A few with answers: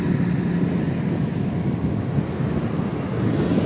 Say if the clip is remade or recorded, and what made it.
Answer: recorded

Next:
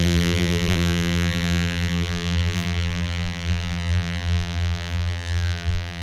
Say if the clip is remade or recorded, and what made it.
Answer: remade, vocoder, BigVGAN v2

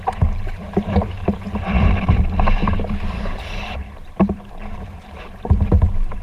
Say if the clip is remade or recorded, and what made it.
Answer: remade, vocoder, BigVGAN v2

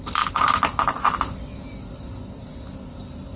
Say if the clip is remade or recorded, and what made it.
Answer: recorded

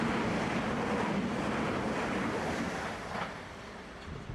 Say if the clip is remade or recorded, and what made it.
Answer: recorded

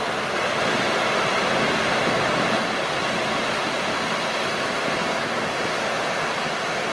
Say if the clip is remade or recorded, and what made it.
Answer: recorded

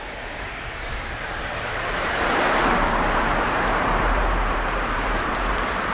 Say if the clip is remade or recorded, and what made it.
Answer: remade, vocoder, BigVGAN v2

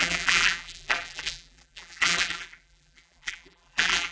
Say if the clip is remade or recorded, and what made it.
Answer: remade, vocoder, BigVGAN v2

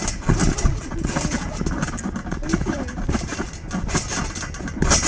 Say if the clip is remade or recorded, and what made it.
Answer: recorded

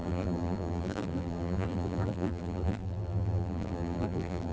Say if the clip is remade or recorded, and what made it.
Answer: remade, vocoder, BigVGAN v2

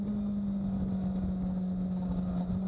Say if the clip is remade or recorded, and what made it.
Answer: recorded